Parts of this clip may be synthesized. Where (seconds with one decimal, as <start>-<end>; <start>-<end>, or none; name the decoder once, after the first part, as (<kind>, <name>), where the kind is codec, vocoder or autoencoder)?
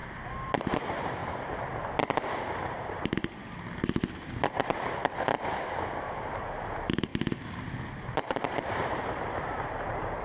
0.6-1.2 (vocoder, BigVGAN v2); 2.7-3.4; 6.4-7.1; 7.9-10.2